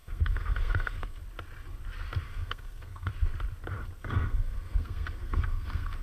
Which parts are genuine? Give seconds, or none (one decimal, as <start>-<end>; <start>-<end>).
1.2-2.2; 3.1-4.0